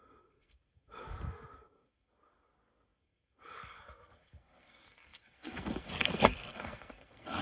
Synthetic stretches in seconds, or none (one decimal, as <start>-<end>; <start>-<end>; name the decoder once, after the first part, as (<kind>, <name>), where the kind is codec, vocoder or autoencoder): 0.0-7.4 (codec, SNAC)